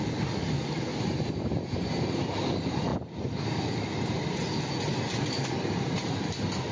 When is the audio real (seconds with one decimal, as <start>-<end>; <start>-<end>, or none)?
0.0-0.9; 1.9-6.7